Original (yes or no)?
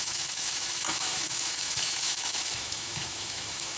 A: no